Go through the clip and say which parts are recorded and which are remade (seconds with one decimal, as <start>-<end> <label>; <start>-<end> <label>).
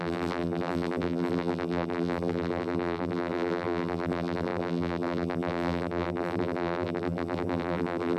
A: 0.0-8.2 remade